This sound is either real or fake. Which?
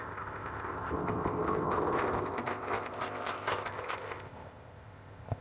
fake